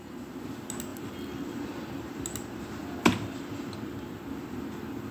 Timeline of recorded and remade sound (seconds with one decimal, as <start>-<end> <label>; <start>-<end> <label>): 0.0-5.1 recorded